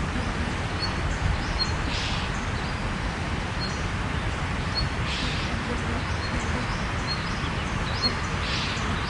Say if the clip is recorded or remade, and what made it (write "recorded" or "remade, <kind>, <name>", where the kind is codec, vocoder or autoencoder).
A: recorded